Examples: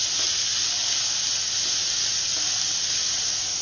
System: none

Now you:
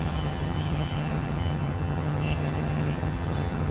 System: vocoder, HiFi-GAN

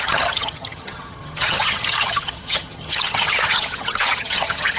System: vocoder, HiFi-GAN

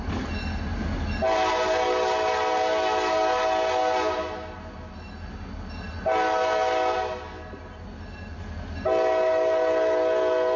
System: none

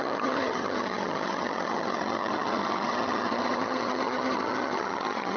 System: vocoder, HiFi-GAN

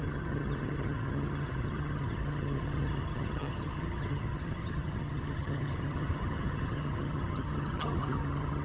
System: vocoder, HiFi-GAN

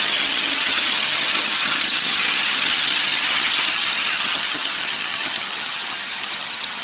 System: vocoder, HiFi-GAN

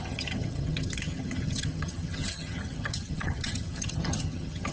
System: vocoder, HiFi-GAN